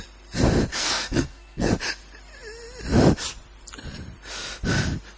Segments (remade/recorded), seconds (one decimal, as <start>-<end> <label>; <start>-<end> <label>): 0.0-0.7 recorded; 0.7-1.7 remade; 1.7-5.2 recorded